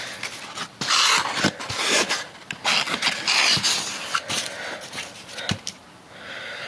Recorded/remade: recorded